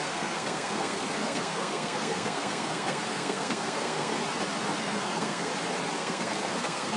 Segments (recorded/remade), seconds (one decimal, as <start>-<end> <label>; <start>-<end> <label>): 0.0-4.1 remade; 4.1-4.8 recorded; 4.8-5.5 remade; 5.5-6.0 recorded; 6.0-7.0 remade